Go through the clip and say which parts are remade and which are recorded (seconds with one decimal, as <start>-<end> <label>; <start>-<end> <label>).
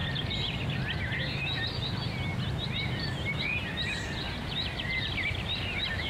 0.0-0.6 remade; 0.6-6.1 recorded